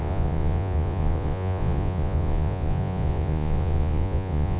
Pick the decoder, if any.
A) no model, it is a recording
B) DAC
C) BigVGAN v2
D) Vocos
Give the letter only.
D